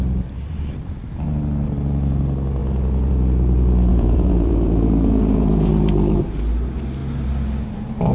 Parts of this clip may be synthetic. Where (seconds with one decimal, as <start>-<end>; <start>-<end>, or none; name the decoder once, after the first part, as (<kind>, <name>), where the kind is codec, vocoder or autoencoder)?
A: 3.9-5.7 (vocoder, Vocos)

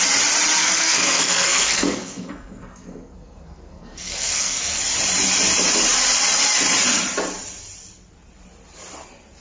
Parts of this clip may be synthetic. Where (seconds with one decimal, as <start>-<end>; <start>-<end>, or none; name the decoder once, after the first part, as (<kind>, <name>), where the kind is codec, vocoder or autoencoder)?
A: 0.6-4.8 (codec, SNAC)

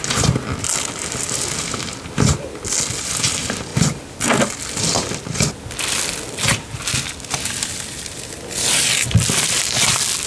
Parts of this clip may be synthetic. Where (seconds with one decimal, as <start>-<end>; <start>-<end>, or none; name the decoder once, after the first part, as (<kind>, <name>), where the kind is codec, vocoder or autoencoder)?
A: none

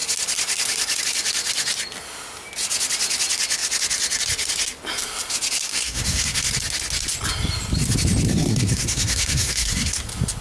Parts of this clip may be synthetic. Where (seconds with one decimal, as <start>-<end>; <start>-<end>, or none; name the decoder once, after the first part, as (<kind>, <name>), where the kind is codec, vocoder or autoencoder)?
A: 5.7-6.5 (codec, SNAC); 8.3-10.0